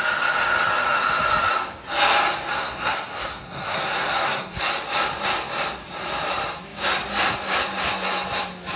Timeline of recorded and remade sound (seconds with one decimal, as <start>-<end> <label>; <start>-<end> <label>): 0.0-2.5 recorded; 2.5-4.6 remade; 4.6-8.8 recorded